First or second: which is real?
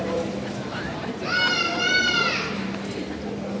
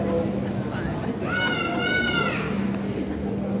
second